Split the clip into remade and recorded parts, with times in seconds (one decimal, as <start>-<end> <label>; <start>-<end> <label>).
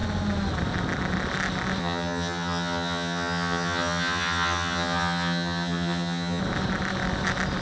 0.0-1.8 recorded; 1.8-6.4 remade; 6.4-7.6 recorded